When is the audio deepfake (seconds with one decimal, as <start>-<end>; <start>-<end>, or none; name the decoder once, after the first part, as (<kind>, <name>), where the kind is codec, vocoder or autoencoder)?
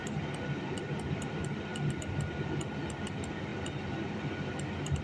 1.1-5.0 (vocoder, BigVGAN v2)